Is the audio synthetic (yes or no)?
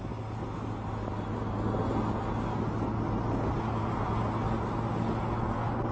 no